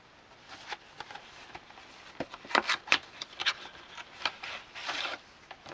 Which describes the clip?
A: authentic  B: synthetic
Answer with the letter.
A